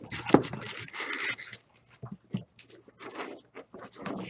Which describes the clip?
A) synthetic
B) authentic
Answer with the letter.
B